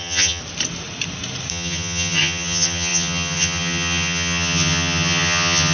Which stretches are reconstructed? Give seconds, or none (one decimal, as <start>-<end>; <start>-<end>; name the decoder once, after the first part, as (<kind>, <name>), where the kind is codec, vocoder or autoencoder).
0.0-0.4 (vocoder, HiFi-GAN); 1.5-5.7